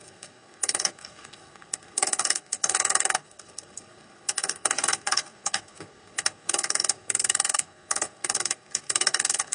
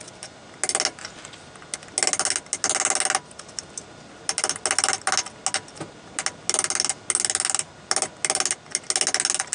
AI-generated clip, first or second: first